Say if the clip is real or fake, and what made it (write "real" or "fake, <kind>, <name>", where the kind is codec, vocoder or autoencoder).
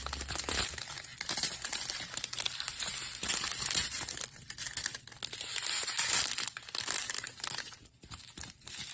real